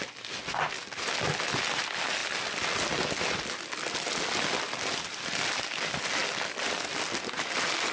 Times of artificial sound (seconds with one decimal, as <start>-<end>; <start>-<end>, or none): none